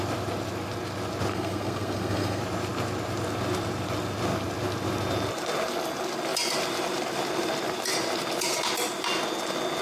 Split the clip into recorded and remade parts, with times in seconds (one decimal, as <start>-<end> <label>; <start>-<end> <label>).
0.0-1.3 recorded; 1.3-2.4 remade; 2.4-9.8 recorded